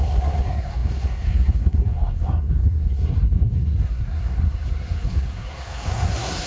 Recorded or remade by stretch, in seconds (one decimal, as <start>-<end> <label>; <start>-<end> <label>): 0.0-6.5 remade